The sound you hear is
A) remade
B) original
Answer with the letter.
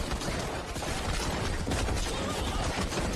B